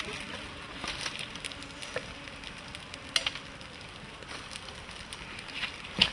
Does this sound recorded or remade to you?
recorded